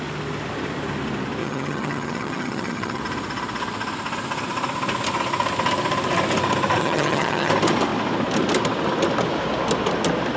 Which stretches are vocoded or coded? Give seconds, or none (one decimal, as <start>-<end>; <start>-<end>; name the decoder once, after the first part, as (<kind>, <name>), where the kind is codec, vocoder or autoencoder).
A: 1.4-3.0 (vocoder, HiFi-GAN); 6.8-7.5